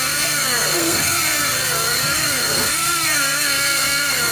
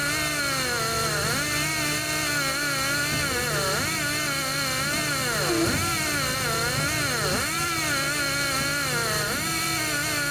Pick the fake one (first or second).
first